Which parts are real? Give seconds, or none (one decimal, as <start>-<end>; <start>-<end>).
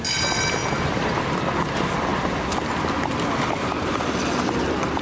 0.0-5.0